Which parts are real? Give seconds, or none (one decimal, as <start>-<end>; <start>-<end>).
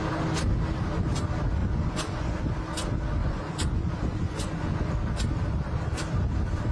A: 0.0-1.6; 2.4-3.2; 4.9-6.7